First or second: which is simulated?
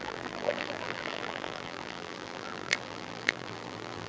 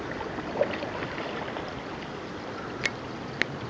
first